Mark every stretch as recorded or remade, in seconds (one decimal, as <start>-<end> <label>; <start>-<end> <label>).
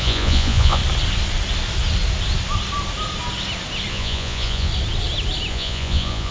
0.0-0.8 remade; 0.8-3.9 recorded; 3.9-4.7 remade; 4.7-5.5 recorded; 5.5-6.3 remade